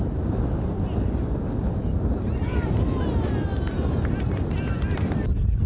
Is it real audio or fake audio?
real